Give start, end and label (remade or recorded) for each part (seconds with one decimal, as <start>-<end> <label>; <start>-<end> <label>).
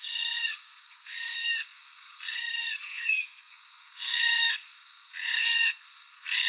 0.0-6.5 remade